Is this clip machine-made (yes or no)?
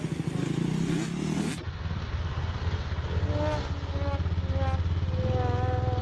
no